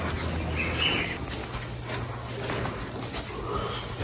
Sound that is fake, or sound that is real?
real